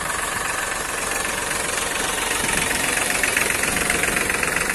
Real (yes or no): no